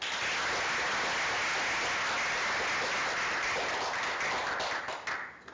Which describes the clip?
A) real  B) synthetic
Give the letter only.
A